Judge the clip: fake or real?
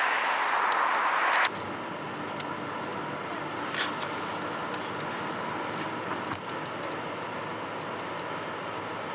real